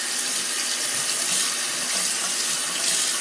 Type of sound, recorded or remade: recorded